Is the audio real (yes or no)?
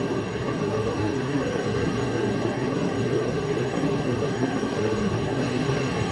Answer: no